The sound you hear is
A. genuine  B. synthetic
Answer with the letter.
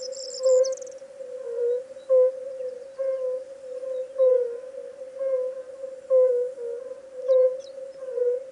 A